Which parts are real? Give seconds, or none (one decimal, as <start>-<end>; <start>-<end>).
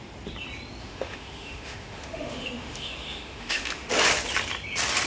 0.0-0.8; 3.9-5.1